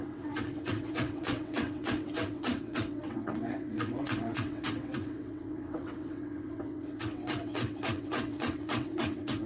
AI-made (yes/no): yes